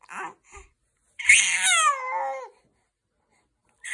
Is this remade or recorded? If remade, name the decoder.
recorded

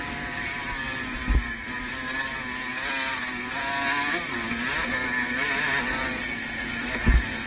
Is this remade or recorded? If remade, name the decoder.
recorded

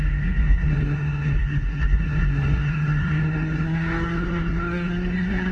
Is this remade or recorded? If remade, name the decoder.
remade, codec, SNAC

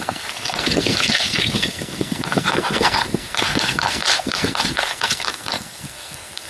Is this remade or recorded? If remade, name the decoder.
remade, codec, SNAC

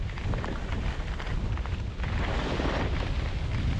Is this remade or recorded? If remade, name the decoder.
recorded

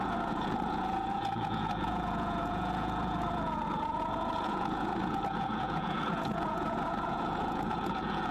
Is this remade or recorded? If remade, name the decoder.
remade, vocoder, Vocos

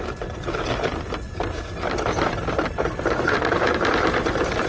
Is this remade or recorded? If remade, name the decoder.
recorded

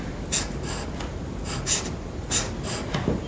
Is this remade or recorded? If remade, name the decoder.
recorded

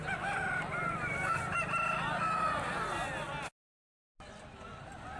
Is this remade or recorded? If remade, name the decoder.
recorded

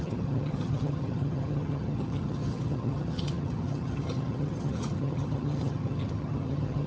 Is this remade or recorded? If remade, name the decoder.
remade, vocoder, HiFi-GAN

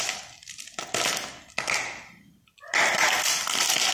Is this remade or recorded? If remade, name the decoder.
recorded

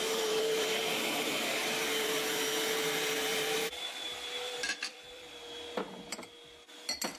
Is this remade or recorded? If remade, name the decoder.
remade, vocoder, BigVGAN v2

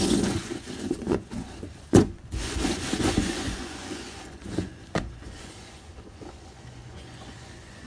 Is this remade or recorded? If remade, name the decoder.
remade, vocoder, Vocos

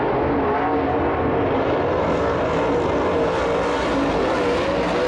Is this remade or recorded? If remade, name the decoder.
recorded